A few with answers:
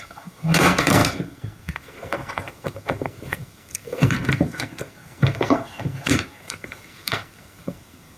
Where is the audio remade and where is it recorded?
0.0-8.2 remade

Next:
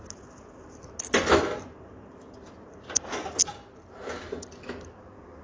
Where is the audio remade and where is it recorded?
0.0-5.4 recorded

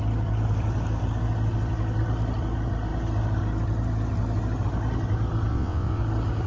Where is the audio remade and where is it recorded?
0.0-5.5 recorded; 5.5-6.0 remade; 6.0-6.5 recorded

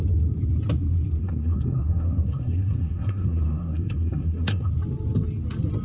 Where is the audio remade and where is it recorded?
0.0-1.2 recorded; 1.2-4.7 remade; 4.7-5.8 recorded